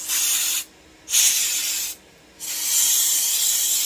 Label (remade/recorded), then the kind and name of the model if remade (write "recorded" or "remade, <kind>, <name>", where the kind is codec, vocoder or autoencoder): recorded